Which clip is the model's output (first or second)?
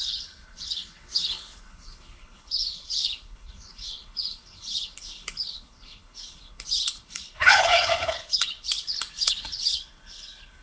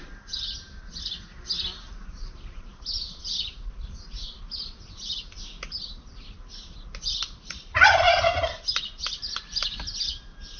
first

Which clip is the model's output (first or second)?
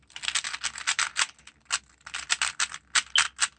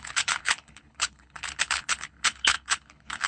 second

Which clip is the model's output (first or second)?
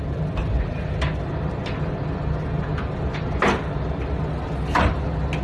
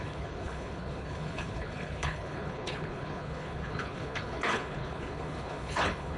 second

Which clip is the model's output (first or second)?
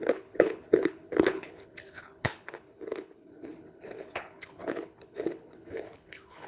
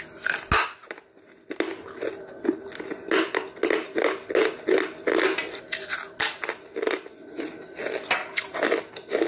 first